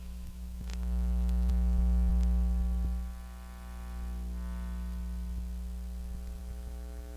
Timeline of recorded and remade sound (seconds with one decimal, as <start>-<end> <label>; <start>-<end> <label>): 0.0-2.1 remade; 2.1-6.4 recorded; 6.4-7.2 remade